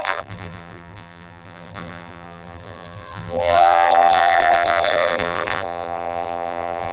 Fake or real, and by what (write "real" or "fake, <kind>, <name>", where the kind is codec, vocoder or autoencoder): fake, vocoder, BigVGAN v2